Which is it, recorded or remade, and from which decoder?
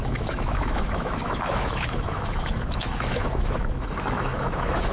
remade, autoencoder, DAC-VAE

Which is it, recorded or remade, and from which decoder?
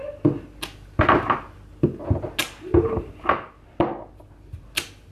recorded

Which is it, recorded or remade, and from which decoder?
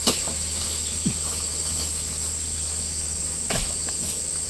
remade, autoencoder, DAC-VAE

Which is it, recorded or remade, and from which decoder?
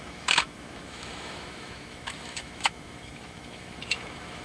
remade, autoencoder, DAC-VAE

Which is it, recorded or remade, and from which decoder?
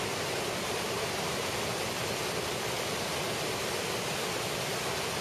recorded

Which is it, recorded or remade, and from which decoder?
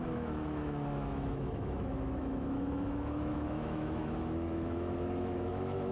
remade, autoencoder, DAC-VAE